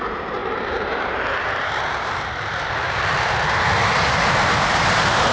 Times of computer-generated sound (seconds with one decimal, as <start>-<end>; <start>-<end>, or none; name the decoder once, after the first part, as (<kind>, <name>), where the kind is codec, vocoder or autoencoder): 0.0-5.3 (vocoder, BigVGAN v2)